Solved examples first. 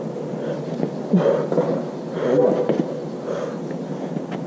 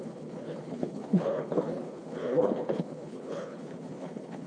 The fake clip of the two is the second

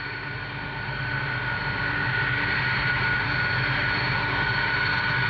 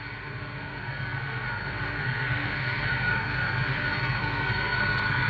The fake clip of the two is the second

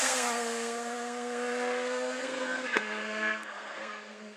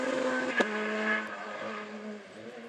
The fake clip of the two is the first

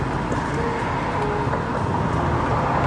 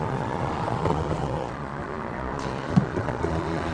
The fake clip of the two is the second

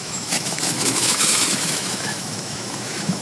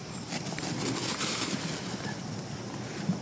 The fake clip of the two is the first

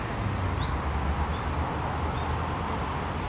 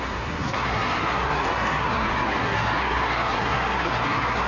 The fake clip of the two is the second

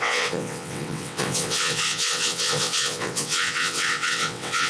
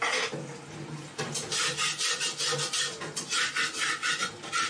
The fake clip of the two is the first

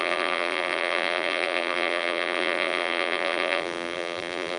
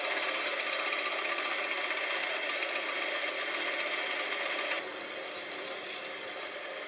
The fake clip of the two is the first